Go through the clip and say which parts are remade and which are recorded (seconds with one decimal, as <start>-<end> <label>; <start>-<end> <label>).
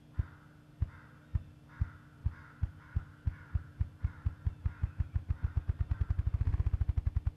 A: 0.0-2.2 recorded; 2.2-6.5 remade; 6.5-7.4 recorded